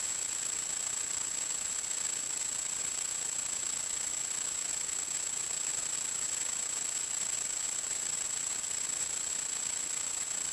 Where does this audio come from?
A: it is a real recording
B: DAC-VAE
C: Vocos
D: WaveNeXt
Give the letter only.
A